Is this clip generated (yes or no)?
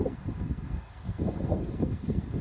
yes